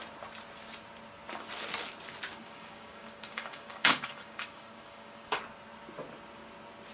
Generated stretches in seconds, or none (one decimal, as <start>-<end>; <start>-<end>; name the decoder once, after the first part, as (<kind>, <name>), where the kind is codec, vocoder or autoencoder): 2.3-5.4 (codec, DAC)